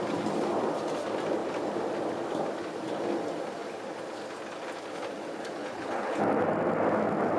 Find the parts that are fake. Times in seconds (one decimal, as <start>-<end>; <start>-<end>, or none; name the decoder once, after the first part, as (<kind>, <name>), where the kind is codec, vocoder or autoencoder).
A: 5.6-6.2 (codec, HILCodec)